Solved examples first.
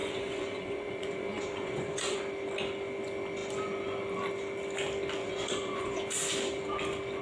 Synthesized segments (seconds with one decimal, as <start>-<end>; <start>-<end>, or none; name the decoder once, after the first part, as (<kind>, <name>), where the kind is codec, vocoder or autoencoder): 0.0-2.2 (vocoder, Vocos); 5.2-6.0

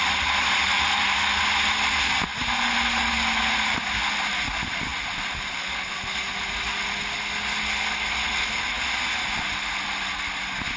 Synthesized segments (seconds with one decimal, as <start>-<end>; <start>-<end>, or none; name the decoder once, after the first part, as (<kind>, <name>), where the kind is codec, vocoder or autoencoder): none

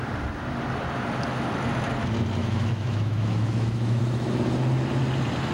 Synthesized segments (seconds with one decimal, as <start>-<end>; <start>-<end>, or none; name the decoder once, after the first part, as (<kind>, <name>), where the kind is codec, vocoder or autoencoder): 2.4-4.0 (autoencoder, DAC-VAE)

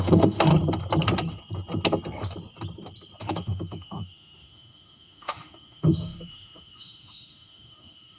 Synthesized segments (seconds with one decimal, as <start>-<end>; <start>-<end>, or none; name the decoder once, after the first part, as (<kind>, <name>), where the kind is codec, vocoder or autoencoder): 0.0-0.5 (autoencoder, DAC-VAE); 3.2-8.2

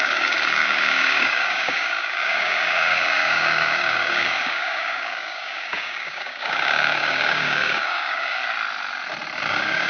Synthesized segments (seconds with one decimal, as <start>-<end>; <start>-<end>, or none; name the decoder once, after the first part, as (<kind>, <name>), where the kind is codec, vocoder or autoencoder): 0.0-8.4 (codec, DAC); 9.5-9.9

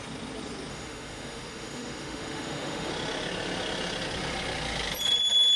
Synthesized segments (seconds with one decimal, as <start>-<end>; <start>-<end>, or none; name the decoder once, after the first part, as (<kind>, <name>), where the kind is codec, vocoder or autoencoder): 0.7-2.9 (autoencoder, DAC-VAE)

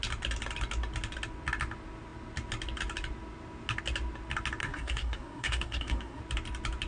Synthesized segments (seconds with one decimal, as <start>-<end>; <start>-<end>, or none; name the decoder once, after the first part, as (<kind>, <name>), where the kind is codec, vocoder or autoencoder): 4.6-6.2 (codec, SNAC)

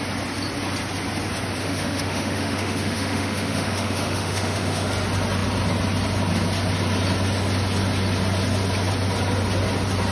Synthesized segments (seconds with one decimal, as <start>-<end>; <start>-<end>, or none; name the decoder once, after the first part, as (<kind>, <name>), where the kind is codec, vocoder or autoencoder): 1.6-4.9 (autoencoder, DAC-VAE)